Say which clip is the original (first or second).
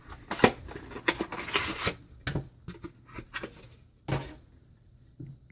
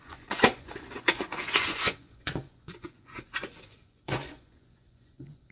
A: first